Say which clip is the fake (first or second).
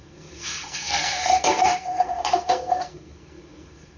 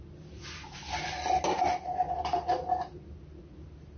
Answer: first